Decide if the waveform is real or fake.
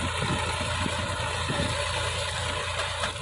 real